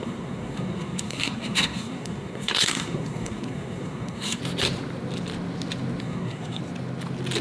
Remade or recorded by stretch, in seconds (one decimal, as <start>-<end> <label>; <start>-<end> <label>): 0.0-4.4 remade; 4.4-6.0 recorded; 6.0-6.6 remade; 6.6-7.4 recorded